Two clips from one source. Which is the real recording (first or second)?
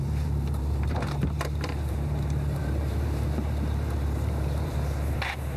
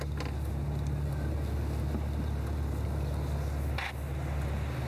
second